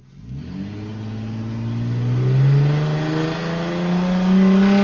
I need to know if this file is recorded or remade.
recorded